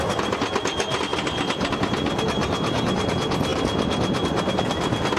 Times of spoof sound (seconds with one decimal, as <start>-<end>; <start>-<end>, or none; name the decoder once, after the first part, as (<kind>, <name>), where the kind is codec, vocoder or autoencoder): none